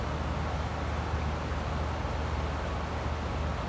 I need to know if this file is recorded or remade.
recorded